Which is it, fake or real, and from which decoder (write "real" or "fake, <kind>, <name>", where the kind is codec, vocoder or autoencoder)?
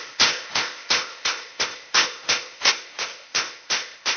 fake, codec, ZipCodec